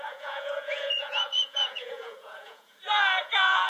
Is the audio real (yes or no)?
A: no